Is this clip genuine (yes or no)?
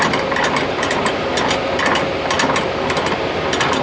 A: yes